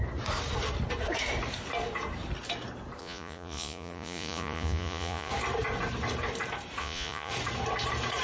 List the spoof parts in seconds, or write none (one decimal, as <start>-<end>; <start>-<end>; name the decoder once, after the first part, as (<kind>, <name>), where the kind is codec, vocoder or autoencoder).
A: 3.0-5.3 (vocoder, Vocos); 6.8-7.3